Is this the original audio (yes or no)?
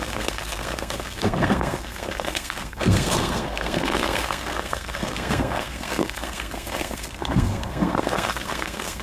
no